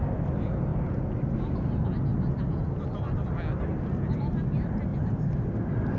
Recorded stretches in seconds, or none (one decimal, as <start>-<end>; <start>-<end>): 0.0-6.0